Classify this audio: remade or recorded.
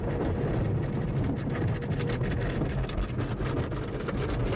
recorded